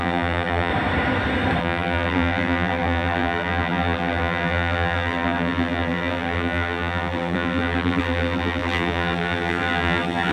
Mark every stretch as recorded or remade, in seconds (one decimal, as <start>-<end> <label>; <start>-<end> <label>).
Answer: 0.0-0.7 remade; 0.7-1.6 recorded; 1.6-10.3 remade